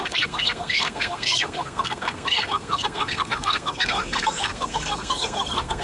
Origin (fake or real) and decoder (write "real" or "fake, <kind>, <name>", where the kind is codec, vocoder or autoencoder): fake, codec, SNAC